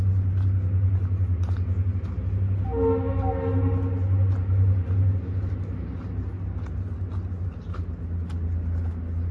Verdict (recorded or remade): recorded